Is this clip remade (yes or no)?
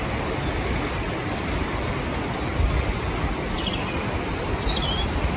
no